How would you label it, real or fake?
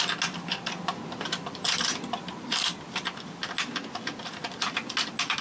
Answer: real